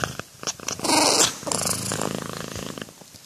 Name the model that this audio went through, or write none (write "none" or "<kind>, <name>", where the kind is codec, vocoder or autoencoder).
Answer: none